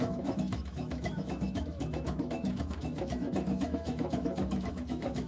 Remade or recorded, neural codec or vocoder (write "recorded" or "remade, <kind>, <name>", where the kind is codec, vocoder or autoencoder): remade, autoencoder, DAC-VAE